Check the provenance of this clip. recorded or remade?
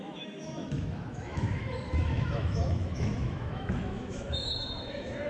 remade